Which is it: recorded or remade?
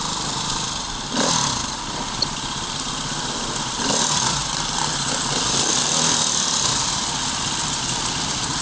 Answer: recorded